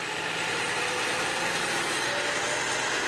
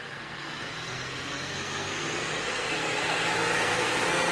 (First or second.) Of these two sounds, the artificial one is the second